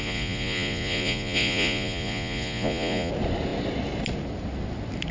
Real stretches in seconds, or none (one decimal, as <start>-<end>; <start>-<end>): 3.1-5.1